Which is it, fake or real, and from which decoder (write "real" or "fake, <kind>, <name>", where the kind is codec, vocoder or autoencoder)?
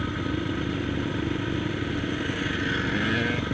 real